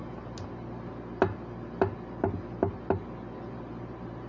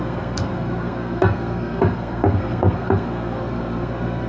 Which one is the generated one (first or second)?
second